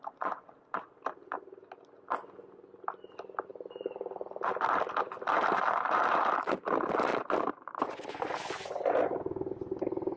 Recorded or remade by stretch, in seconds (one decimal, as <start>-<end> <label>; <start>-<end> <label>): 0.0-3.5 recorded; 3.5-5.3 remade; 5.3-7.1 recorded; 7.1-7.8 remade; 7.8-10.2 recorded